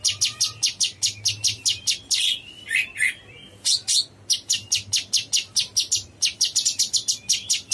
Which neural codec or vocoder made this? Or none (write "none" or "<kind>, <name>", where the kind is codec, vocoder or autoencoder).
none